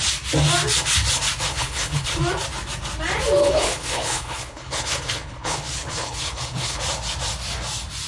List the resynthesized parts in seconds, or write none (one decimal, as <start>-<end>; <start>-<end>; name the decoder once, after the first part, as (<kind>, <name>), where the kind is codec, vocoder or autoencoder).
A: 1.5-2.2 (codec, HILCodec); 3.4-6.8

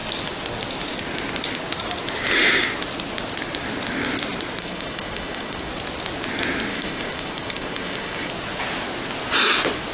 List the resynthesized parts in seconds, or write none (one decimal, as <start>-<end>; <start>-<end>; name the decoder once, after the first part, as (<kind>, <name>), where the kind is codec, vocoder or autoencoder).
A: 4.6-5.7 (codec, DAC); 6.7-8.3

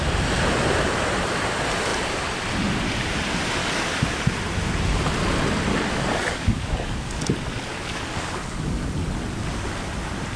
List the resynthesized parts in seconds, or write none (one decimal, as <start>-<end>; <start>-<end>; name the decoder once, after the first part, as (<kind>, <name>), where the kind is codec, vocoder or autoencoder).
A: 3.6-4.2 (codec, DAC); 5.7-7.2; 7.7-8.9